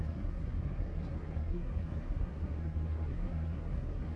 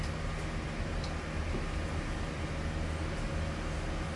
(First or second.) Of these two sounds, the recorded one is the second